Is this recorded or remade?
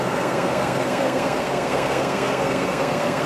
remade